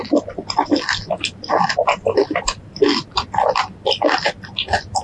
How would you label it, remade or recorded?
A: recorded